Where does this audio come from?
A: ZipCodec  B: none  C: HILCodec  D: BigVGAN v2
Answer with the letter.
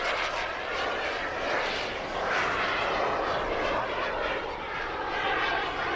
B